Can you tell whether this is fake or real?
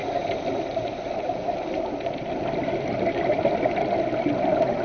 real